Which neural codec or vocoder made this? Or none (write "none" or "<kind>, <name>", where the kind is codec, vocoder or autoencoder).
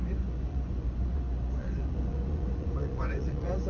vocoder, Vocos